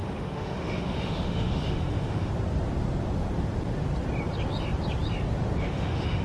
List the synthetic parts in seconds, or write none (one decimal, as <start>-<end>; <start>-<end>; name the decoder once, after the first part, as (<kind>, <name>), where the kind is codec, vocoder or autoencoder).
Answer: 0.0-2.3 (autoencoder, DAC-VAE); 5.6-6.2